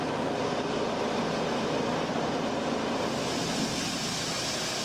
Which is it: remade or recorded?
recorded